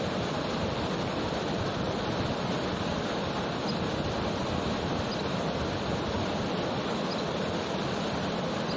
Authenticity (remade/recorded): recorded